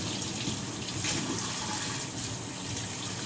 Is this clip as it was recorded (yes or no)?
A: yes